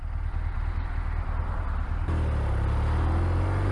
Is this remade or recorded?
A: recorded